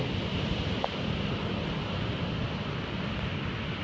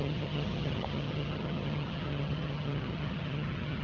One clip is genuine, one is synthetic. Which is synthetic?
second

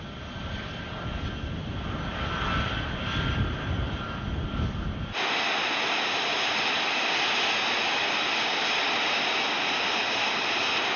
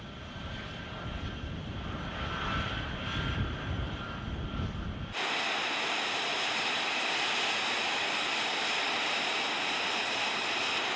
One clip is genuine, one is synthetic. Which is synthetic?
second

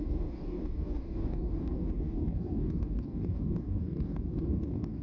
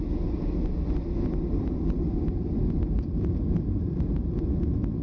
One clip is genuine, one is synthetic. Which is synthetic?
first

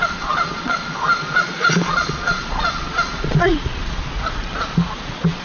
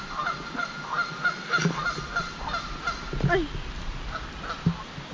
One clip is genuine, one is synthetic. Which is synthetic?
first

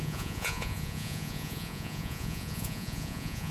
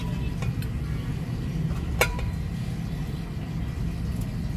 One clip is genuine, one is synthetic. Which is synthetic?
first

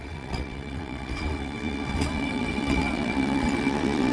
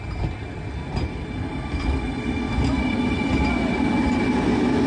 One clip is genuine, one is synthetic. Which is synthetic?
first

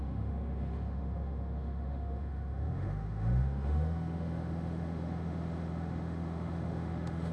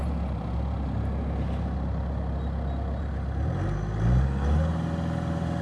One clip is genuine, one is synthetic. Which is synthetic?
first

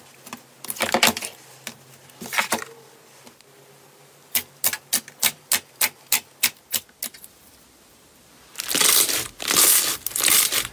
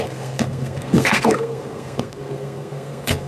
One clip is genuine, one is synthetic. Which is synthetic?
second